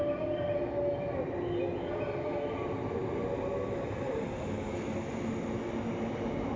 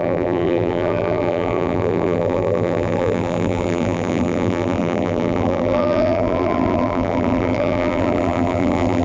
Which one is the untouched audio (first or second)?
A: first